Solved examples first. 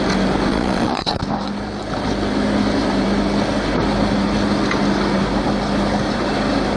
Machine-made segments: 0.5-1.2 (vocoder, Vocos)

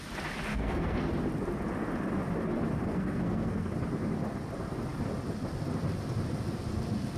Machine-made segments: 0.5-1.1 (codec, SNAC); 2.9-3.7

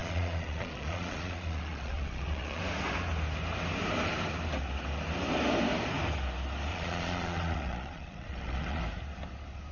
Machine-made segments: 0.0-2.6 (vocoder, Vocos); 6.7-8.8